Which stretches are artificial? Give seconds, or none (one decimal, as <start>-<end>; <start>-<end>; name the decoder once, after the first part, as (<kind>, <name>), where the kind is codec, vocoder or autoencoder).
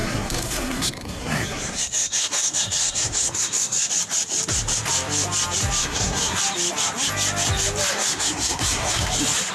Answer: 0.0-3.9 (codec, SNAC); 5.8-6.4; 7.9-9.1